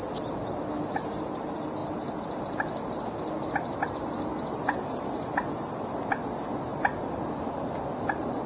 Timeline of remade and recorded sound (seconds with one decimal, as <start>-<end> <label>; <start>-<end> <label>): 0.0-8.5 recorded